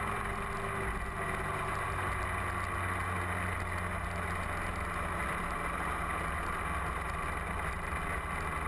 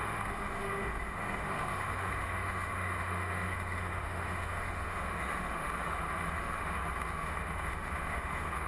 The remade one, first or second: second